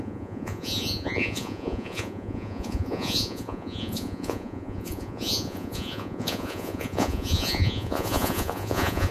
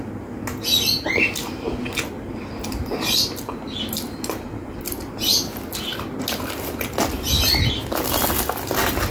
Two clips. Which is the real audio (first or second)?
second